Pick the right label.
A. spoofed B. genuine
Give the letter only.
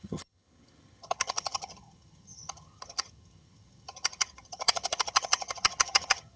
A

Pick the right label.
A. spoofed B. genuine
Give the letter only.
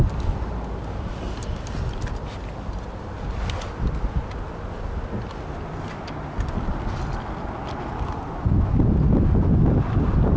B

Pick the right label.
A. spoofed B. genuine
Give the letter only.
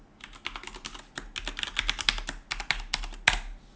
B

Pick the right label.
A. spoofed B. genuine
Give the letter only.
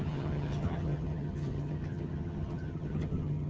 A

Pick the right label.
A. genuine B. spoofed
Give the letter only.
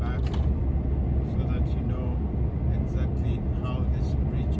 A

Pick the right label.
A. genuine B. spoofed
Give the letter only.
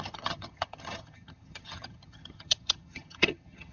B